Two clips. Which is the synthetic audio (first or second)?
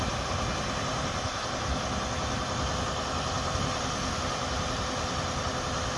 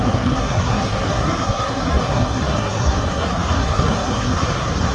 second